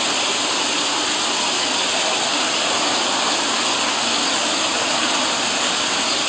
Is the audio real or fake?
real